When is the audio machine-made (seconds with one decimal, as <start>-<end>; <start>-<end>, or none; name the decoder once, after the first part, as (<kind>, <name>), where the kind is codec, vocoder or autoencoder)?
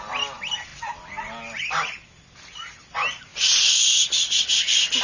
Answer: none